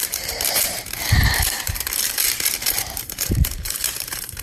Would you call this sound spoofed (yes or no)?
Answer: yes